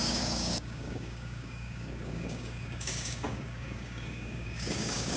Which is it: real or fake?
fake